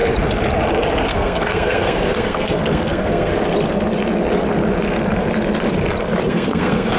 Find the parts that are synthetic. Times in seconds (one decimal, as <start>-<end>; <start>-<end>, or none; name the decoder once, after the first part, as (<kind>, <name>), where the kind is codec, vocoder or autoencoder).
1.0-3.3 (codec, SNAC); 6.3-7.0